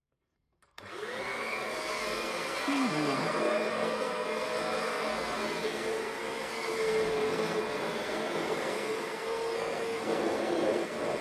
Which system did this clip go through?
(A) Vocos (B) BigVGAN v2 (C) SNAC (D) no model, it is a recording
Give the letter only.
C